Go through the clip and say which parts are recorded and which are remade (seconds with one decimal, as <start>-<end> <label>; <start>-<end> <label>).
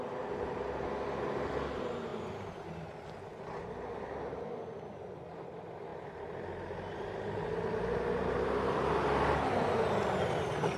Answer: 0.0-10.8 recorded